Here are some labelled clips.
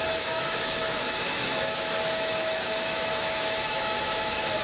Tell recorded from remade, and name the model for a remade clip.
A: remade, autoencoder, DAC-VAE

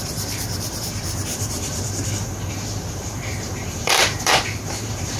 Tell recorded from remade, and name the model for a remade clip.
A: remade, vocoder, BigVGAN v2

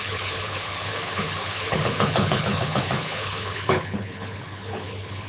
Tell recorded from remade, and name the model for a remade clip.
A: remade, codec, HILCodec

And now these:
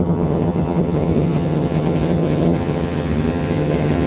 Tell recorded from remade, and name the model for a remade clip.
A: remade, vocoder, HiFi-GAN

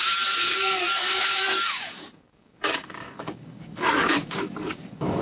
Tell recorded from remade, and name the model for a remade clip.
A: remade, codec, DAC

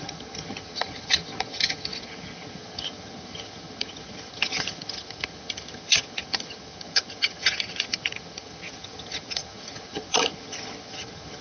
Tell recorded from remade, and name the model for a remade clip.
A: remade, vocoder, HiFi-GAN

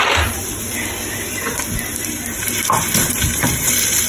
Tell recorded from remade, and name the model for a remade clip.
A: remade, vocoder, BigVGAN v2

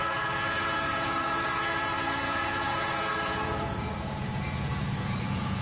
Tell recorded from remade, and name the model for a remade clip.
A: remade, vocoder, Vocos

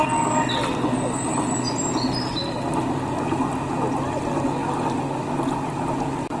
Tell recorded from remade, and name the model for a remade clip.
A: recorded